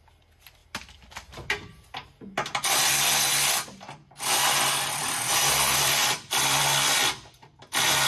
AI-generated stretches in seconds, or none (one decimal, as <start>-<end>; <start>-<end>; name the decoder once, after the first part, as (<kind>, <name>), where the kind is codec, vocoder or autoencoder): 6.0-6.6 (vocoder, BigVGAN v2)